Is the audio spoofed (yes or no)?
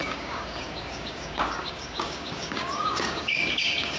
yes